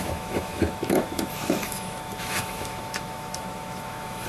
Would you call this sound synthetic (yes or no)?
yes